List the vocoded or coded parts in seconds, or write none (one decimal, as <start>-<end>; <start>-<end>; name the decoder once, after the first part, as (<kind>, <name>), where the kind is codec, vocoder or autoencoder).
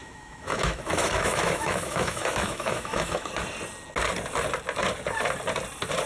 0.0-3.3 (autoencoder, DAC-VAE)